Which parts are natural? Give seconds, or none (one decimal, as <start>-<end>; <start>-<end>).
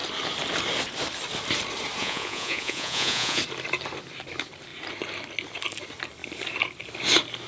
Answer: 0.0-2.0; 3.4-7.5